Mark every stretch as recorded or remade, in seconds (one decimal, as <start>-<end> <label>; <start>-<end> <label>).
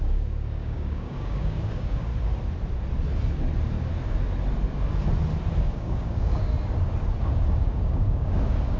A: 0.0-2.1 remade; 2.1-5.6 recorded; 5.6-6.5 remade; 6.5-7.2 recorded; 7.2-8.8 remade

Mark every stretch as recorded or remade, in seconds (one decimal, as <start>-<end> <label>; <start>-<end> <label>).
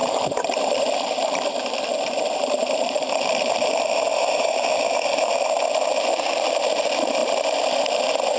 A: 0.0-8.4 recorded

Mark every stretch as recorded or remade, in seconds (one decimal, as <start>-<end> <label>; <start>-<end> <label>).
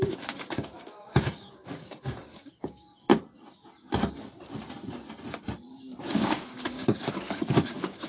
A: 0.0-3.1 remade; 3.1-6.0 recorded; 6.0-8.1 remade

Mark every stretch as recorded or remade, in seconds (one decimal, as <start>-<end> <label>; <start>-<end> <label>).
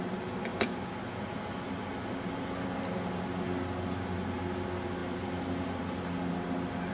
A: 0.0-6.9 recorded